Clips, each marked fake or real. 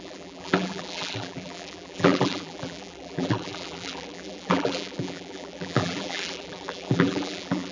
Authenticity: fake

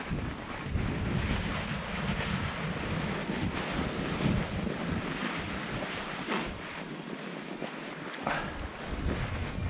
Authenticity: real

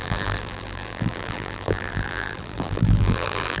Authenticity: fake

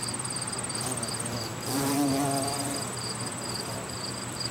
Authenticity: fake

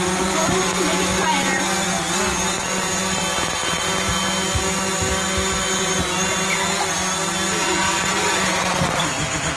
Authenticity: real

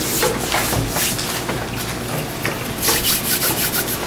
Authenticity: real